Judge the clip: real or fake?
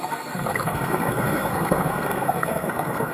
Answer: fake